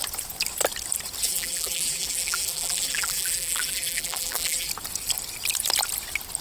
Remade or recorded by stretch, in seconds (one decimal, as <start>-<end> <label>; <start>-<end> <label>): 0.0-1.2 recorded; 1.2-4.7 remade; 4.7-6.4 recorded